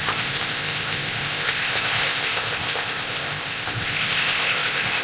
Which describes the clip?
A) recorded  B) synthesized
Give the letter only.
B